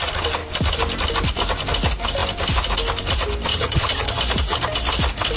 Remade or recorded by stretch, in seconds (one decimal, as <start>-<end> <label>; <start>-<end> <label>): 0.0-3.5 recorded; 3.5-4.2 remade; 4.2-5.4 recorded